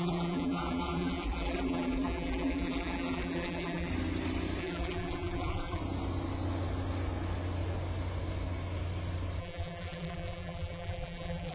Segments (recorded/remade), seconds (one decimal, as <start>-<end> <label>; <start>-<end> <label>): 0.0-3.9 remade; 3.9-4.6 recorded; 4.6-5.8 remade; 5.8-9.4 recorded; 9.4-11.5 remade